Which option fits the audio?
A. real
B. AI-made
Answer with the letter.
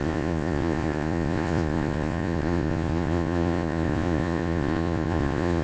B